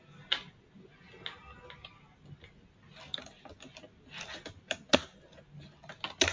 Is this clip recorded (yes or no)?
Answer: yes